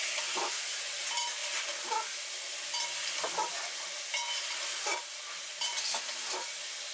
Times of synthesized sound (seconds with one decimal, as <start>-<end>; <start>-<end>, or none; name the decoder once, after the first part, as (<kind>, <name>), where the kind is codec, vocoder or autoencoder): none